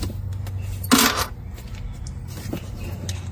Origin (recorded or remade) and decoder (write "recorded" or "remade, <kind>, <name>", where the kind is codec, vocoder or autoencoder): recorded